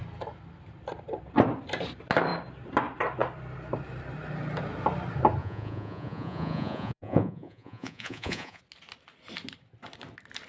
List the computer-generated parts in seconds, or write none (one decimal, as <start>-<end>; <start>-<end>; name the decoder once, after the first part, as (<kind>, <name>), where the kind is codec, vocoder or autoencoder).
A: 5.4-8.6 (vocoder, Vocos)